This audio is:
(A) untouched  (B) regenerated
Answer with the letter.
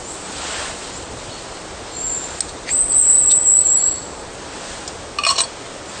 A